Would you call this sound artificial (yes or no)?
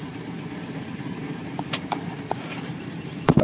yes